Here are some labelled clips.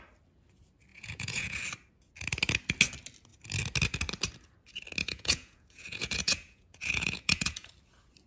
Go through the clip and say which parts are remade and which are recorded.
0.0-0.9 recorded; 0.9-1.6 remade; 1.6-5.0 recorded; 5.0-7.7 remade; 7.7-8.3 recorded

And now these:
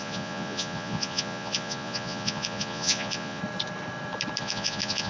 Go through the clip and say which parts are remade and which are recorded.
0.0-3.4 remade; 3.4-4.4 recorded; 4.4-5.1 remade

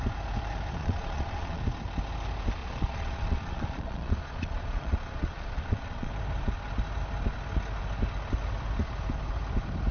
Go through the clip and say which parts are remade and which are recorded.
0.0-0.8 recorded; 0.8-1.6 remade; 1.6-2.6 recorded; 2.6-6.1 remade; 6.1-9.9 recorded